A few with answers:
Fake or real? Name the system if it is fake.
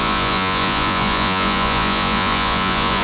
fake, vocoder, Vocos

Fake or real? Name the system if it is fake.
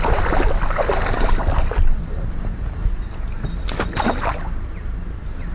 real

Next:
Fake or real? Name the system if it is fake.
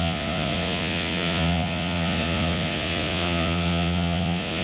fake, vocoder, Vocos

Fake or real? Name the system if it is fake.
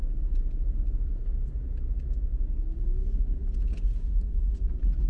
real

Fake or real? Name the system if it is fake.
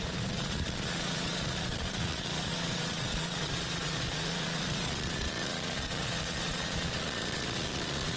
fake, vocoder, Vocos